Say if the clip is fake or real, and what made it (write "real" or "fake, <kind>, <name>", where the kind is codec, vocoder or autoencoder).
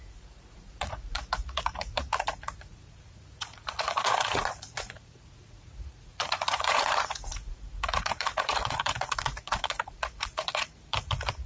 fake, vocoder, Vocos